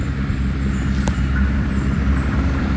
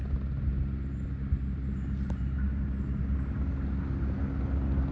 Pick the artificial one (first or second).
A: first